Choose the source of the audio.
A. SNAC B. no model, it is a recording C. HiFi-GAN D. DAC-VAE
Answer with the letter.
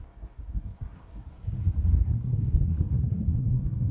A